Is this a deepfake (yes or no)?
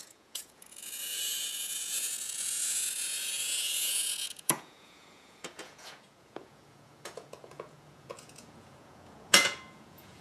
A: yes